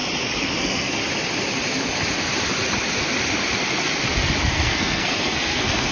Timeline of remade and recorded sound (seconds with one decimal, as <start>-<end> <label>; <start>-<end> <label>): 0.0-0.6 recorded; 0.6-1.0 remade; 1.0-4.5 recorded; 4.5-5.9 remade